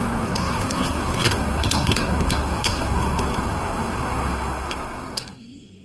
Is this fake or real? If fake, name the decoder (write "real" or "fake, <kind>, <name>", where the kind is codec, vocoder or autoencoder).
fake, codec, SNAC